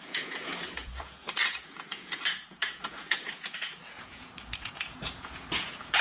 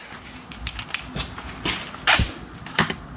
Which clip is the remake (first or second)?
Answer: first